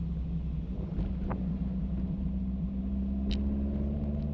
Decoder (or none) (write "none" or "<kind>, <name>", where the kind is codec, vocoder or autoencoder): none